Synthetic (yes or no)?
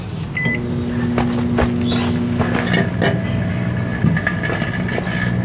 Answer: no